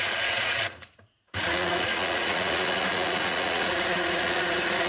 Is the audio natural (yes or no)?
no